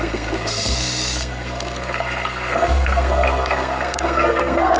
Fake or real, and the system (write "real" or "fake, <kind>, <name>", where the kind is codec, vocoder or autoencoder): fake, codec, SNAC